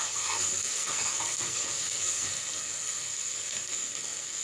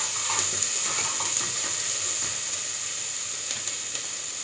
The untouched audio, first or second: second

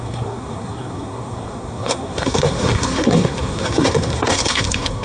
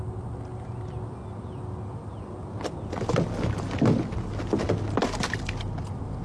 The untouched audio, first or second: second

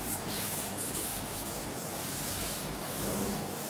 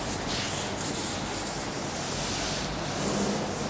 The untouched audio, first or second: second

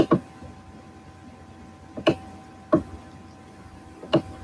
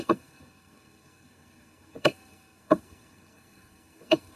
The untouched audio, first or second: first